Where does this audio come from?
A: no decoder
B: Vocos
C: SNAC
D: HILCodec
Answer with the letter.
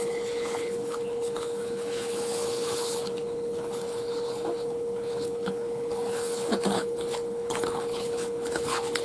D